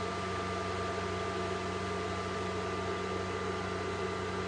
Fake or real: real